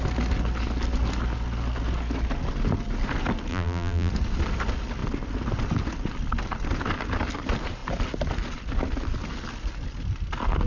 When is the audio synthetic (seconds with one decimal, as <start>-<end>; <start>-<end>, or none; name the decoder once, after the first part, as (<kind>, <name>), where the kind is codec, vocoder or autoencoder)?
3.5-4.1 (vocoder, BigVGAN v2)